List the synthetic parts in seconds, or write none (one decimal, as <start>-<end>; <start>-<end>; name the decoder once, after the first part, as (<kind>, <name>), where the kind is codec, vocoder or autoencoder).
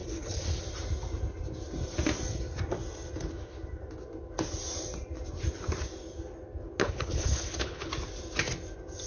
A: 0.0-0.6 (codec, HILCodec); 6.8-7.9